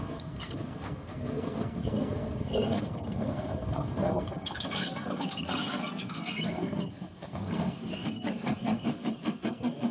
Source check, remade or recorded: remade